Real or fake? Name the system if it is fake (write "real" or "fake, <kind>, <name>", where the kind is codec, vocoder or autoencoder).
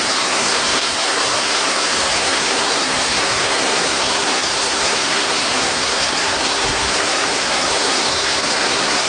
fake, codec, SNAC